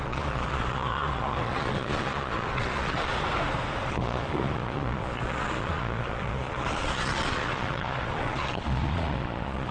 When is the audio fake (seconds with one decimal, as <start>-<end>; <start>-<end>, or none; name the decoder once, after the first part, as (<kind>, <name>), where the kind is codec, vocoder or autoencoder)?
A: 0.0-3.1 (vocoder, Vocos); 3.9-9.7